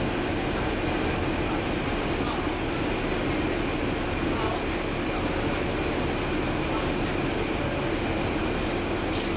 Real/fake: real